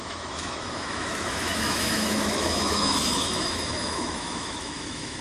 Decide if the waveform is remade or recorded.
remade